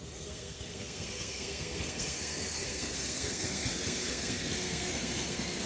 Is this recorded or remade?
remade